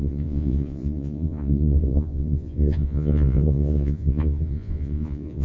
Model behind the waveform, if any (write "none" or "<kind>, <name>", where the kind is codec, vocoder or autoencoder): vocoder, Vocos